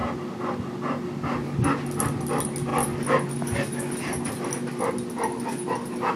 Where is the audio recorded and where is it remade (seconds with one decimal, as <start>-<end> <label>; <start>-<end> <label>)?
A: 0.0-6.2 recorded